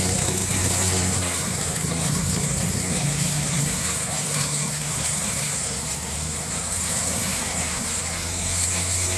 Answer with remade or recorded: remade